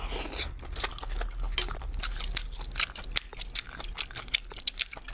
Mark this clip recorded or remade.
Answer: recorded